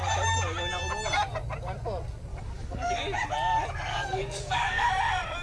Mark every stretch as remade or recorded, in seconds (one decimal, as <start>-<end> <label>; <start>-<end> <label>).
0.0-2.3 recorded; 2.3-2.9 remade; 2.9-3.9 recorded; 3.9-4.9 remade; 4.9-5.4 recorded